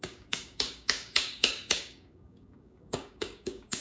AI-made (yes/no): yes